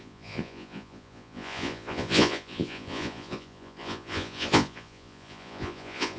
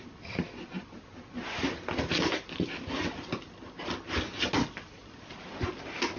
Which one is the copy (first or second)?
first